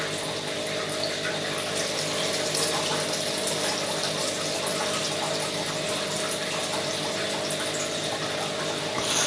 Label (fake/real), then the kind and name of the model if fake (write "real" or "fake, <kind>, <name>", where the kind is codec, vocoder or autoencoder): real